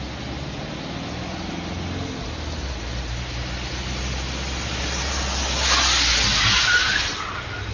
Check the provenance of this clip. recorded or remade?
recorded